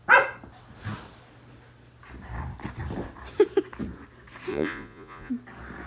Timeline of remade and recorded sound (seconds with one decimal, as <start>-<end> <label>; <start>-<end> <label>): 0.0-4.5 recorded; 4.5-5.3 remade; 5.3-5.9 recorded